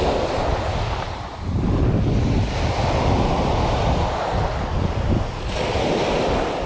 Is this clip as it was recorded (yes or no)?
yes